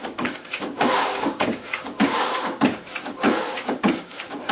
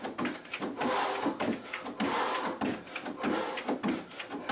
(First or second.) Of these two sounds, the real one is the second